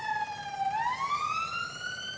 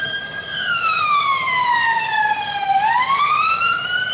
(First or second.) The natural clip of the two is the first